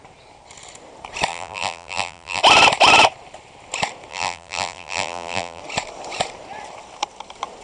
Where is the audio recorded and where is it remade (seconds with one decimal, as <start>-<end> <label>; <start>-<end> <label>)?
0.0-1.3 recorded; 1.3-2.4 remade; 2.4-4.1 recorded; 4.1-5.6 remade; 5.6-7.6 recorded